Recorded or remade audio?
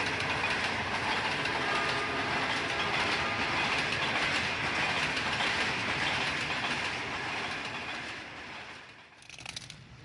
recorded